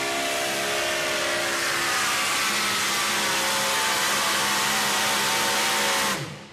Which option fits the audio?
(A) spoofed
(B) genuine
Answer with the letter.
B